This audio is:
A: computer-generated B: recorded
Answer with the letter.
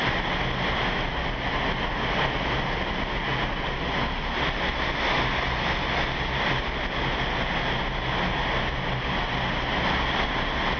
B